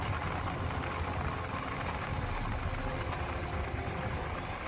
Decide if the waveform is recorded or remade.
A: recorded